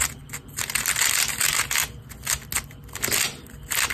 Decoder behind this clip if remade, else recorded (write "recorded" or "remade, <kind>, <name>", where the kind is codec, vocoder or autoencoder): recorded